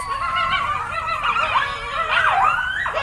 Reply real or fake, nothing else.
real